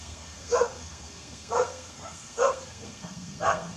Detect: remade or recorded remade